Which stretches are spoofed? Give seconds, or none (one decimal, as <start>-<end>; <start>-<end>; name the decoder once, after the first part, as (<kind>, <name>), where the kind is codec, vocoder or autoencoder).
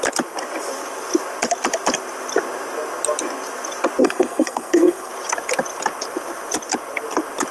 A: 4.0-5.1 (codec, SNAC)